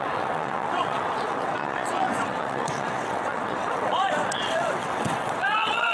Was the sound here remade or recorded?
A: remade